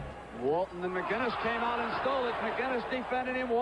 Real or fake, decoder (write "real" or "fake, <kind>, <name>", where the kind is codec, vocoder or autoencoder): real